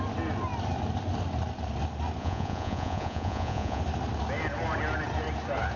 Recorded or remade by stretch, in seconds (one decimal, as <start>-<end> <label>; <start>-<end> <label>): 0.0-2.2 recorded; 2.2-3.8 remade; 3.8-5.8 recorded